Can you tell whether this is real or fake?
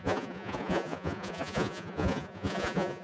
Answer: fake